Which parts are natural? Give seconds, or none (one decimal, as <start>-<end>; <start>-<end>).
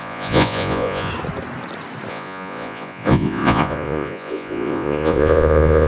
1.1-2.1